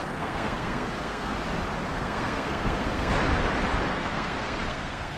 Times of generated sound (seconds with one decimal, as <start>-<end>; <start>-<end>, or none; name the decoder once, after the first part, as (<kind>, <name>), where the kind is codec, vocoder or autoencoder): 0.0-1.3 (codec, SNAC); 1.9-3.1; 3.9-5.2